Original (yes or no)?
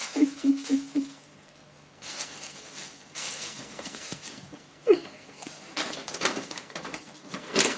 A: no